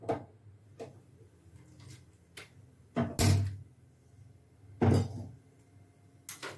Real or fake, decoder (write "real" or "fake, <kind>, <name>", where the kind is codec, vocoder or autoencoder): real